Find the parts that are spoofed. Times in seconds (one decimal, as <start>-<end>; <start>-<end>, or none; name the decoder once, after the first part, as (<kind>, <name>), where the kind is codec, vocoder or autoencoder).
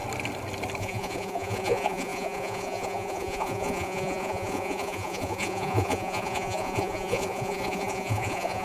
0.8-8.6 (vocoder, Vocos)